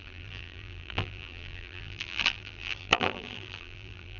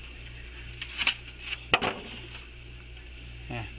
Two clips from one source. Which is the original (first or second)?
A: second